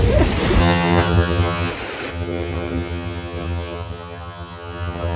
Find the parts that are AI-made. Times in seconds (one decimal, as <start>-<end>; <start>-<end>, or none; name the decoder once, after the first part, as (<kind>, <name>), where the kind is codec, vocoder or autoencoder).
0.6-1.7 (vocoder, HiFi-GAN); 2.1-5.2